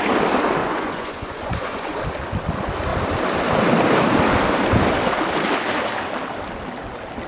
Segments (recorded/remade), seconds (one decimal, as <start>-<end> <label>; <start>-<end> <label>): 0.0-0.6 recorded; 0.6-2.0 remade; 2.0-7.3 recorded